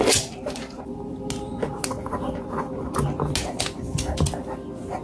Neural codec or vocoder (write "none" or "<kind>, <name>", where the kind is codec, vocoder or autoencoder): none